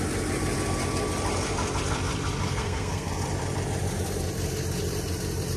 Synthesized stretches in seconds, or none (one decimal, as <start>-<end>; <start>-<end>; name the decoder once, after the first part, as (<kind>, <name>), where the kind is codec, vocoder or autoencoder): 2.5-3.1 (codec, SNAC)

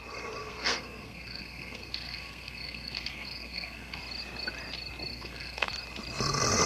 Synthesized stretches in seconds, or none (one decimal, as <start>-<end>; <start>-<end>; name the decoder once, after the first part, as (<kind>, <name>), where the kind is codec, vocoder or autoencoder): 0.4-4.0 (codec, SNAC); 5.1-5.7

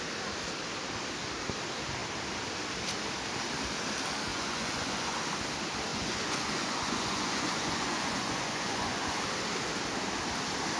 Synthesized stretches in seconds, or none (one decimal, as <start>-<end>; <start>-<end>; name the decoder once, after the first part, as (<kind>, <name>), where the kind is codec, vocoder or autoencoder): 4.3-5.2 (vocoder, Vocos); 5.9-9.2

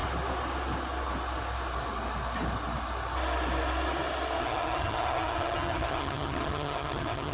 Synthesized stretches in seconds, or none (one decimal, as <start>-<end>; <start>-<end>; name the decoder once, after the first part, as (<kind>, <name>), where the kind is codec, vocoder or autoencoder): 4.4-7.3 (vocoder, HiFi-GAN)